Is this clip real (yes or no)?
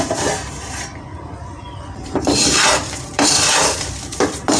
no